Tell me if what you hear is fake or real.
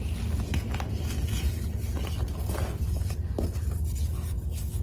real